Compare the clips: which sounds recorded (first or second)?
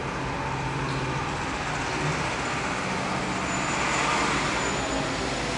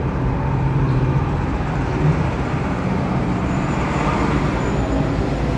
first